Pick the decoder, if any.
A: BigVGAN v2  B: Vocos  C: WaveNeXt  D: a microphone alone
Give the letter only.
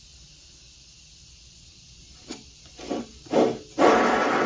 D